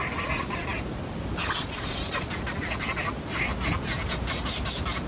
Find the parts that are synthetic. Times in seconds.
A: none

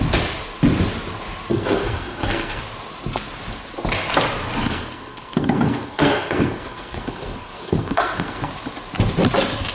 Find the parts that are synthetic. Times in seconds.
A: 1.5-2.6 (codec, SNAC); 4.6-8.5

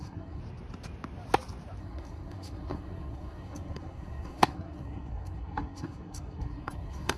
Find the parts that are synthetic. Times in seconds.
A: 0.0-0.4 (codec, SNAC); 1.8-7.2

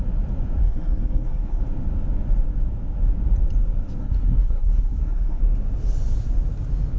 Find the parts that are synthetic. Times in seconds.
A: 0.6-1.6 (codec, SNAC); 4.0-5.4

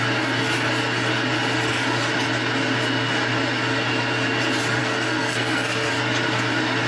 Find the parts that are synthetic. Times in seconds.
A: 4.8-5.9 (codec, SNAC)